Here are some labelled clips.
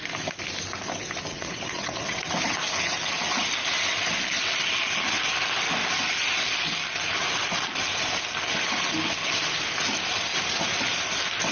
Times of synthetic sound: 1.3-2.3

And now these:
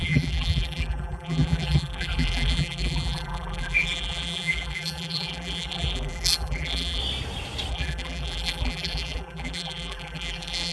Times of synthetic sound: 0.0-7.0; 7.7-10.7